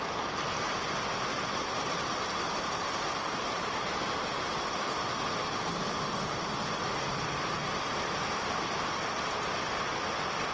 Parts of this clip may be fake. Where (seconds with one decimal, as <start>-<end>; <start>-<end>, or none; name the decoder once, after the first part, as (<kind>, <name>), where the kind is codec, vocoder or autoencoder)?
1.3-6.5 (vocoder, BigVGAN v2)